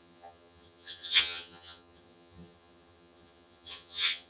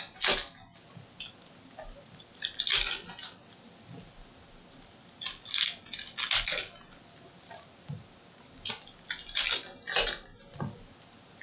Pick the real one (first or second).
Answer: second